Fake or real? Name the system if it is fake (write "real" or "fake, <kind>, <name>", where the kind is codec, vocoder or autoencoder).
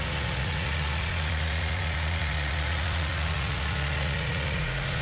fake, vocoder, Vocos